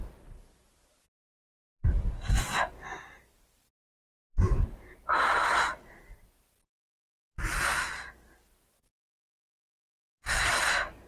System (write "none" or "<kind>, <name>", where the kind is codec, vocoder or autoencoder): none